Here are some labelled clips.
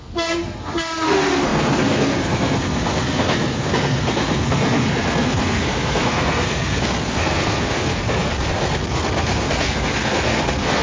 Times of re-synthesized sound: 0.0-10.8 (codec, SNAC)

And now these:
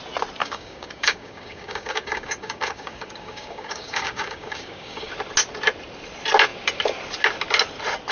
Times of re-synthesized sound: 0.4-5.1 (codec, DAC)

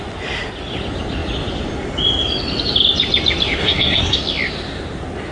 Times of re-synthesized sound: 3.6-4.2 (codec, SNAC)

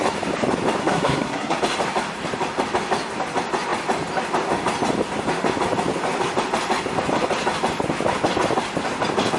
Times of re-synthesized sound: 0.8-1.6 (codec, SNAC)

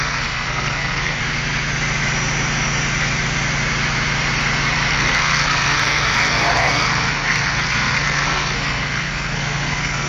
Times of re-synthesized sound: 0.0-1.2 (codec, SNAC); 4.9-10.1